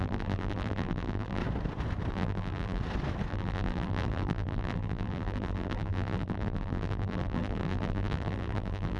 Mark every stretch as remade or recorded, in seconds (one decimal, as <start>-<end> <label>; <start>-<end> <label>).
0.0-1.4 remade; 1.4-2.1 recorded; 2.1-2.8 remade; 2.8-3.3 recorded; 3.3-9.0 remade